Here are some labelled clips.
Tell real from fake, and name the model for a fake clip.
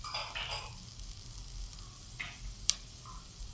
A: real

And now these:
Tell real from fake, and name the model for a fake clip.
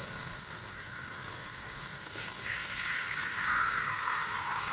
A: fake, codec, SNAC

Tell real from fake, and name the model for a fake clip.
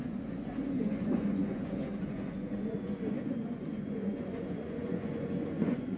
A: fake, vocoder, Vocos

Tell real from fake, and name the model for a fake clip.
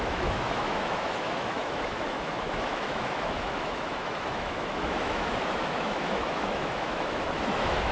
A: fake, autoencoder, DAC-VAE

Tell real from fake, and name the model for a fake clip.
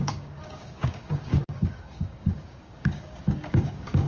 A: fake, codec, DAC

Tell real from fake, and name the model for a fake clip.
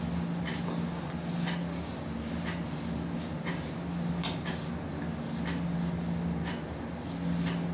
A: real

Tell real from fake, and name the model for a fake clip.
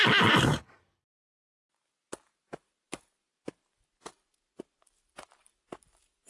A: real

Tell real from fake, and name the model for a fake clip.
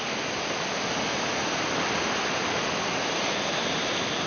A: real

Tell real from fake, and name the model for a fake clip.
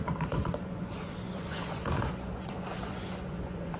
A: fake, vocoder, Vocos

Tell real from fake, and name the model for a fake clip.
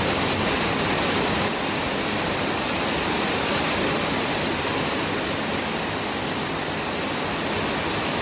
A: real